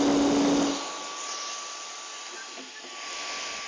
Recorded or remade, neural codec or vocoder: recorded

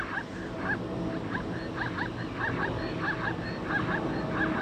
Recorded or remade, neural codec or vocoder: recorded